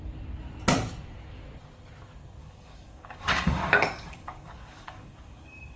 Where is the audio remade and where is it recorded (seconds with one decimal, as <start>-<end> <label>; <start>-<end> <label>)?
0.0-2.4 recorded; 2.4-5.8 remade